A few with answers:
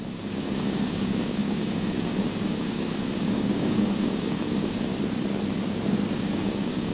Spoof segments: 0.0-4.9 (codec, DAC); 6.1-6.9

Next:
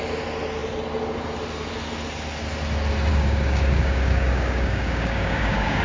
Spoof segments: 3.1-5.8 (codec, DAC)

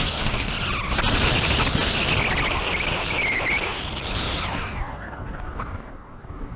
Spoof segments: 0.0-0.5 (codec, DAC); 4.5-6.6

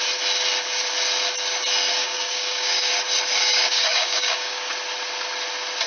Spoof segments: 2.0-2.9 (codec, DAC); 3.4-4.7

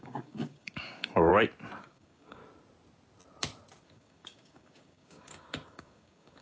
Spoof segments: 0.0-1.3 (codec, DAC); 1.8-2.4; 3.8-6.4

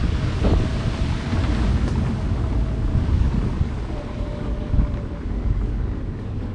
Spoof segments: 0.0-0.7 (codec, DAC); 1.7-2.4; 3.0-6.5